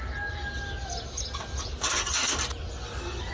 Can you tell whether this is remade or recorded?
recorded